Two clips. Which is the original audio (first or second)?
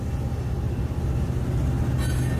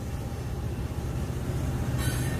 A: first